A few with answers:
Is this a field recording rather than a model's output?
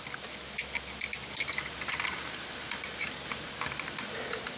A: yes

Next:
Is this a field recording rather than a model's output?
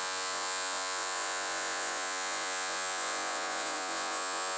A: no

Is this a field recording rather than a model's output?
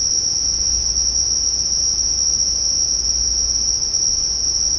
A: yes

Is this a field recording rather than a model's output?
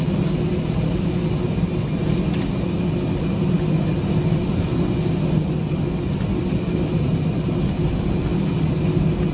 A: yes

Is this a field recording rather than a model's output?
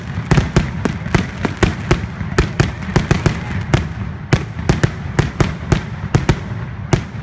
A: yes